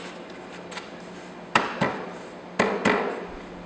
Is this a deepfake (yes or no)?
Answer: no